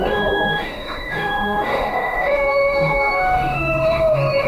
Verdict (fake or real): fake